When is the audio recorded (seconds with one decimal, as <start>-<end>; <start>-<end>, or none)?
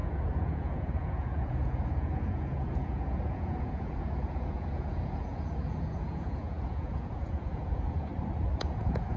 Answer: 8.1-8.6